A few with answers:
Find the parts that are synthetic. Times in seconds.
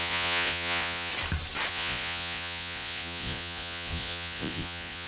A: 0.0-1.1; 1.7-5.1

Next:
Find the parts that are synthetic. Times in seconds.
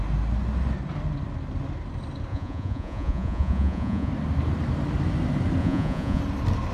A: 2.3-4.1; 5.6-6.2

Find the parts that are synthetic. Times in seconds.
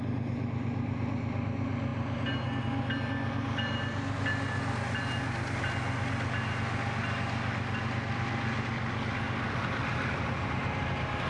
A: none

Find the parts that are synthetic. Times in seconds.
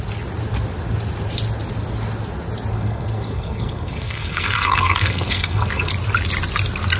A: 2.7-5.9